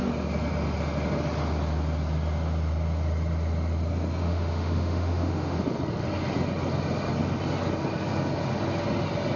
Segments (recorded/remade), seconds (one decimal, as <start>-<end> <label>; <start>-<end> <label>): 0.0-4.2 recorded; 4.2-5.6 remade; 5.6-9.4 recorded